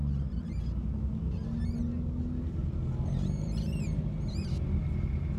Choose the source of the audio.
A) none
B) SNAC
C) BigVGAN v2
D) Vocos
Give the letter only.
A